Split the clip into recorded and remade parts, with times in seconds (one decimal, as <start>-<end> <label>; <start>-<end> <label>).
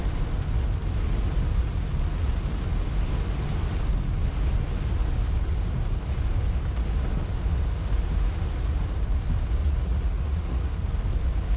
0.0-9.6 recorded; 9.6-10.7 remade; 10.7-11.6 recorded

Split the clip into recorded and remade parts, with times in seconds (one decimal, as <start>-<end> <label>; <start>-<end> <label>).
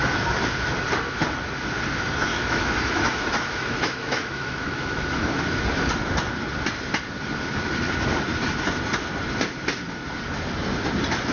0.0-2.3 recorded; 2.3-5.4 remade; 5.4-11.3 recorded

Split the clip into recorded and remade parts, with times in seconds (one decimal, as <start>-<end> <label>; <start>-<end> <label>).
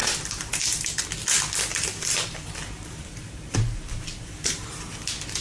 0.0-1.0 remade; 1.0-1.7 recorded; 1.7-4.9 remade; 4.9-5.4 recorded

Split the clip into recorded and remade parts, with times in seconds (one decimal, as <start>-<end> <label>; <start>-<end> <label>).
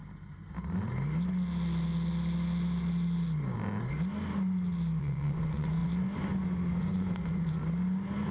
0.0-5.0 recorded; 5.0-5.8 remade; 5.8-6.8 recorded; 6.8-7.6 remade; 7.6-8.3 recorded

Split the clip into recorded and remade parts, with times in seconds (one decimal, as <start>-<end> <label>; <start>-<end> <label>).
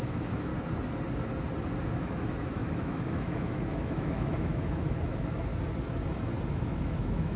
0.0-0.5 remade; 0.5-2.0 recorded; 2.0-5.5 remade; 5.5-6.5 recorded; 6.5-7.4 remade